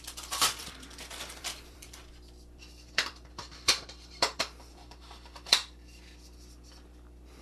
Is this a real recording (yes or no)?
no